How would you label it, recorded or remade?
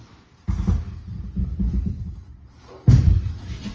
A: recorded